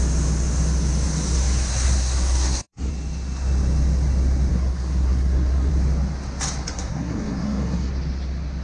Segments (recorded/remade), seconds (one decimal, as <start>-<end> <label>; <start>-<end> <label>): 0.0-1.7 recorded; 1.7-2.9 remade; 2.9-4.5 recorded; 4.5-5.7 remade; 5.7-6.6 recorded; 6.6-7.9 remade; 7.9-8.6 recorded